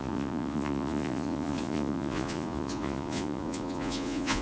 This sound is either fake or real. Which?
fake